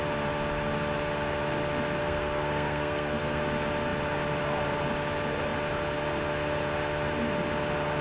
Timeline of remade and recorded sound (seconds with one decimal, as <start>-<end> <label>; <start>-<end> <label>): 0.0-2.0 recorded; 2.0-3.4 remade; 3.4-8.0 recorded